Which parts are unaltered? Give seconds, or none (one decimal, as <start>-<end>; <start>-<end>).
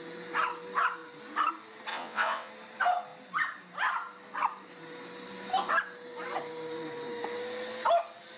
0.0-1.9; 2.5-8.4